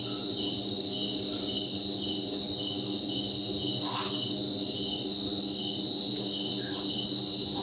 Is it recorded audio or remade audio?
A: recorded